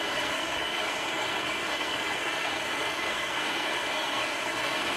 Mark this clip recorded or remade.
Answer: remade